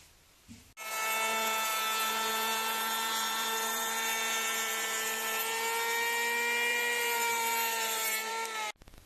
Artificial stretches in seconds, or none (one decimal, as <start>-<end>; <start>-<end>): 1.7-5.4; 6.7-8.3